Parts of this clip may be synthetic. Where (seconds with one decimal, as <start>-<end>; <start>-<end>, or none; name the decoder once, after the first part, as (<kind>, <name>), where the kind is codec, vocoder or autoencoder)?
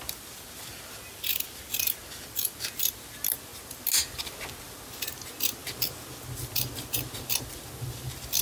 none